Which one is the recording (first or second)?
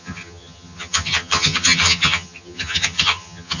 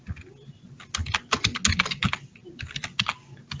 second